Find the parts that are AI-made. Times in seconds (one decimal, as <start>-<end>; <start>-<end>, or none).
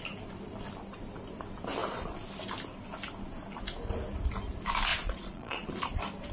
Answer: 4.9-5.7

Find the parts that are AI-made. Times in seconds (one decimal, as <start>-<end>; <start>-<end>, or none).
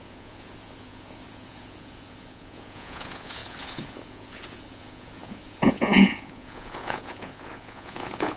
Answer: 0.0-8.4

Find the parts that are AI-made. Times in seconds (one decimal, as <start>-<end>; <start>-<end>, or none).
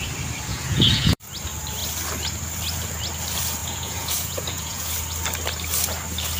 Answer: 0.5-1.3; 3.6-4.9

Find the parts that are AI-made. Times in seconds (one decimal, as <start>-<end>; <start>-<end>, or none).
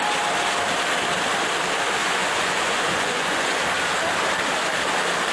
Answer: 2.0-3.6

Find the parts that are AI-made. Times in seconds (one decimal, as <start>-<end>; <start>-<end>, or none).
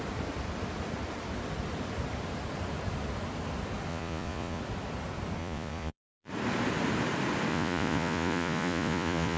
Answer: 3.9-4.6; 5.4-6.3; 7.5-9.4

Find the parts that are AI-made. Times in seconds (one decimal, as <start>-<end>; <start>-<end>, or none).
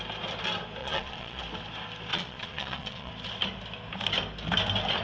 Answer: 0.8-1.4; 2.1-3.1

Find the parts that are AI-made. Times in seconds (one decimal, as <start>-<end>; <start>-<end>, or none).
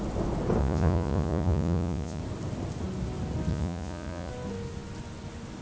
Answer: 0.6-2.2; 3.5-4.3